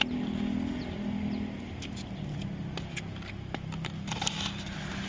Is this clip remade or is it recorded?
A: recorded